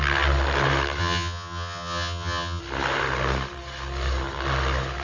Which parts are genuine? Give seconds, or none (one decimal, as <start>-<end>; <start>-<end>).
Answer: 0.0-1.0; 2.6-5.0